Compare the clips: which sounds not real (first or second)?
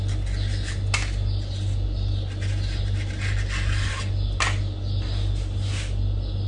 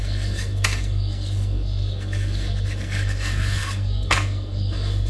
second